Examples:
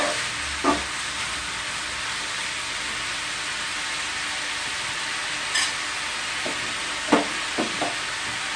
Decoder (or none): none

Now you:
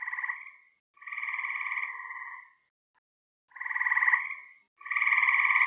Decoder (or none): none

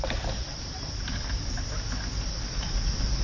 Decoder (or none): none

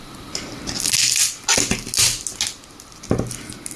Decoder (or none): none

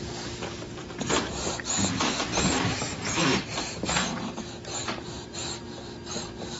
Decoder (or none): vocoder, BigVGAN v2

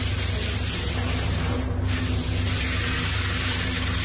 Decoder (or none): none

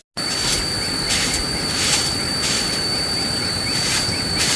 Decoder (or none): none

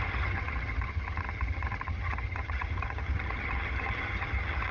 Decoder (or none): vocoder, HiFi-GAN